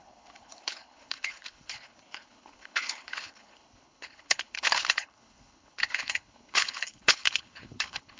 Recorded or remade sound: remade